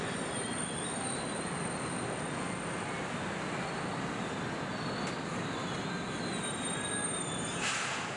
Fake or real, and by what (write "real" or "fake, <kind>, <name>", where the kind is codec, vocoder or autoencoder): real